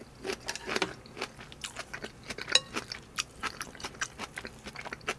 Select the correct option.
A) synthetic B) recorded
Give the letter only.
B